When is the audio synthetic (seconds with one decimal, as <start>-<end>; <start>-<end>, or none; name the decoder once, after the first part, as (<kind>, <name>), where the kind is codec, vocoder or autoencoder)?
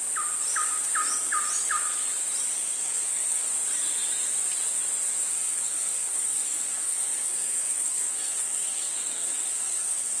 2.5-3.5 (codec, SNAC); 5.3-10.2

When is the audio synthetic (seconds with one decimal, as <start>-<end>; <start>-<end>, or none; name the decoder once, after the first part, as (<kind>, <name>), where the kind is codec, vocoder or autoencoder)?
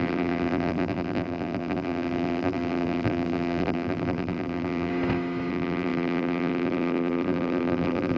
0.0-4.9 (vocoder, BigVGAN v2); 5.5-8.2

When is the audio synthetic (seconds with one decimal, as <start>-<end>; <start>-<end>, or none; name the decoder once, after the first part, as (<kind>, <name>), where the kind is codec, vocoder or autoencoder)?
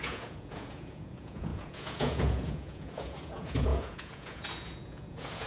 0.0-5.5 (vocoder, Vocos)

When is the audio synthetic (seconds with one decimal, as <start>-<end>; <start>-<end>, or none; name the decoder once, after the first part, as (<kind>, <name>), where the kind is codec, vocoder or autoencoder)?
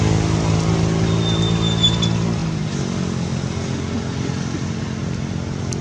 none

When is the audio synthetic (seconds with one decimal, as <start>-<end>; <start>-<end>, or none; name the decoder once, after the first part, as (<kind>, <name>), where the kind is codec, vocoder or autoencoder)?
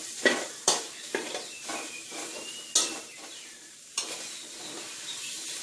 0.0-2.2 (vocoder, BigVGAN v2); 2.9-3.9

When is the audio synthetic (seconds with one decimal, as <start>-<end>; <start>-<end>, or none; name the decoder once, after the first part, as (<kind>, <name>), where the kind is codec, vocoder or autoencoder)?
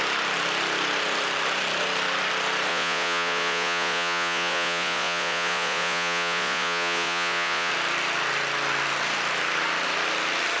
2.7-7.7 (vocoder, Vocos)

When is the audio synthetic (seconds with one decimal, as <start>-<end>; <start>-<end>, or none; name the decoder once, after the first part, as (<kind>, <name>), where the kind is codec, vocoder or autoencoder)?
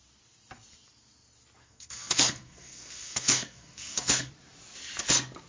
1.6-4.3 (codec, SNAC)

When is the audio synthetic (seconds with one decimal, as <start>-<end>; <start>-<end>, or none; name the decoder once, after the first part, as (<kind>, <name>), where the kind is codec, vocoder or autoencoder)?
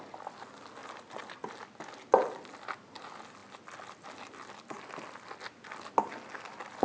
none